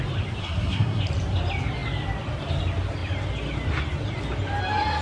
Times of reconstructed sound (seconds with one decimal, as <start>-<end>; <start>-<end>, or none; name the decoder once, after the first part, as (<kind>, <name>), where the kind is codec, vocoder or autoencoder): 0.4-1.0 (codec, SNAC)